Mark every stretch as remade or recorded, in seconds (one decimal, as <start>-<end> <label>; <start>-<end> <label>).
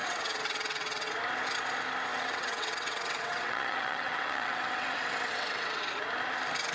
0.0-1.1 remade; 1.1-2.1 recorded; 2.1-5.9 remade; 5.9-6.7 recorded